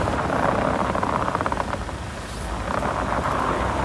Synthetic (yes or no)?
no